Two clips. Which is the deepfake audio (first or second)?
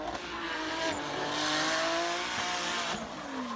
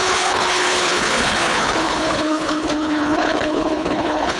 second